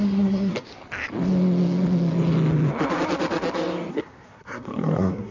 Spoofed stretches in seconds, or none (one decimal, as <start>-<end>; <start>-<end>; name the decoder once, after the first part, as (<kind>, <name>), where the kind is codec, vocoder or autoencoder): 0.0-0.7 (codec, SNAC); 3.9-5.3